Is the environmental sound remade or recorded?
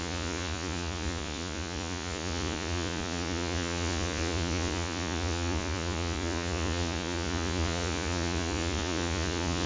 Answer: remade